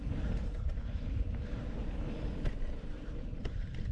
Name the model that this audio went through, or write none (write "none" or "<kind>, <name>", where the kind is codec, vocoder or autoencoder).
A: vocoder, BigVGAN v2